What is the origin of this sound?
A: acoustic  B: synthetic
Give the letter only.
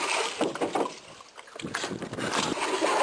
A